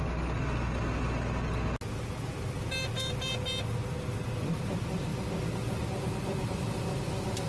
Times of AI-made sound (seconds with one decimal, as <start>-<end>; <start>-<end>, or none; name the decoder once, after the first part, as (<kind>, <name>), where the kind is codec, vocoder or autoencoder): none